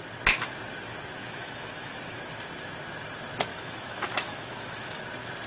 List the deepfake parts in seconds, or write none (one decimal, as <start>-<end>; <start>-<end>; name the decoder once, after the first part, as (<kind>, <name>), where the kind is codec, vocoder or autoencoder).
1.2-2.2 (autoencoder, DAC-VAE); 3.5-5.0